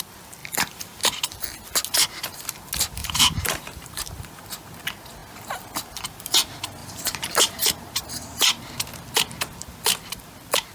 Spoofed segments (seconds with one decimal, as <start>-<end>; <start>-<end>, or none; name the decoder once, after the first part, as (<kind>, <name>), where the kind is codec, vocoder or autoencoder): 3.0-4.4 (vocoder, BigVGAN v2); 6.8-7.6